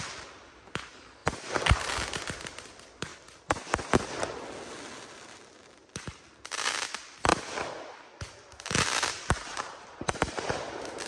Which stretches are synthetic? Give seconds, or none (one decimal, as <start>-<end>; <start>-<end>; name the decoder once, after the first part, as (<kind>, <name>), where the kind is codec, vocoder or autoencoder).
9.5-11.1 (vocoder, BigVGAN v2)